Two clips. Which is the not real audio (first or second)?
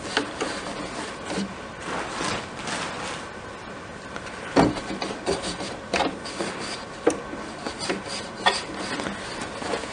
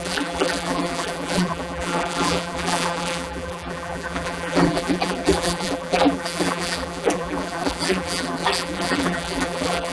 second